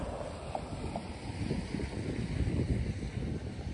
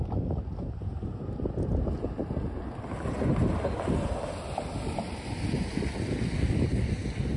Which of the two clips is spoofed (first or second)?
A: first